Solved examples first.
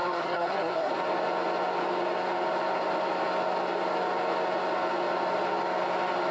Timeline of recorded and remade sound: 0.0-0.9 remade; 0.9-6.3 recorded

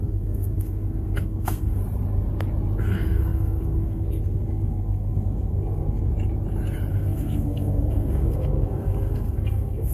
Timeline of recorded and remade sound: 0.0-1.8 remade; 1.8-2.8 recorded; 2.8-6.1 remade; 6.1-6.9 recorded; 6.9-9.9 remade

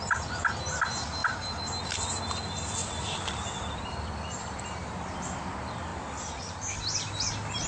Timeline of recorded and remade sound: 0.0-1.2 recorded; 1.2-1.9 remade; 1.9-2.8 recorded; 2.8-5.4 remade; 5.4-5.9 recorded; 5.9-6.5 remade; 6.5-7.7 recorded

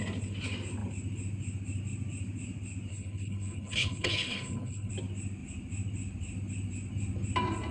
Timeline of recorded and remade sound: 0.0-2.9 recorded; 2.9-4.9 remade; 4.9-7.7 recorded

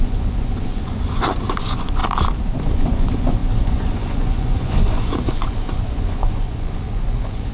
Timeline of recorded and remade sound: 0.0-2.0 remade; 2.0-2.6 recorded; 2.6-7.5 remade

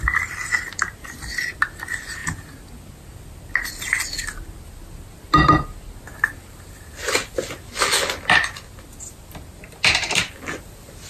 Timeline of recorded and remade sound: 0.0-11.1 recorded

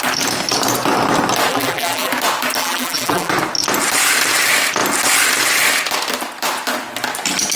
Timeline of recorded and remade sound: 0.0-1.5 recorded; 1.5-2.1 remade; 2.1-2.6 recorded; 2.6-3.3 remade; 3.3-7.6 recorded

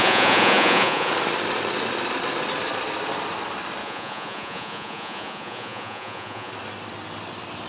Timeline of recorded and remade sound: 0.0-1.1 remade; 1.1-3.8 recorded; 3.8-6.5 remade; 6.5-7.7 recorded